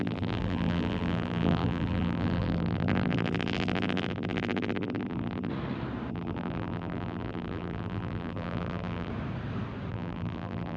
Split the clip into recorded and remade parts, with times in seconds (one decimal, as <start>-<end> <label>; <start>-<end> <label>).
0.0-5.5 remade; 5.5-6.1 recorded; 6.1-9.1 remade; 9.1-9.9 recorded; 9.9-10.8 remade